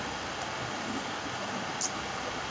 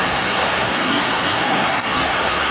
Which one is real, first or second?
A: first